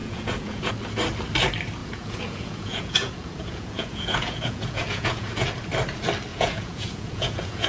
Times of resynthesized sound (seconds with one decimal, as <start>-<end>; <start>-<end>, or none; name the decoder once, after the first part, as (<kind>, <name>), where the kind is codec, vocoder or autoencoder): 0.0-0.7 (vocoder, Vocos); 1.8-5.5; 6.3-7.7